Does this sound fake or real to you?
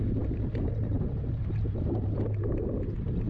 real